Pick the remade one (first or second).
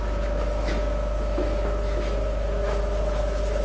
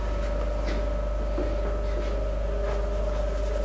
first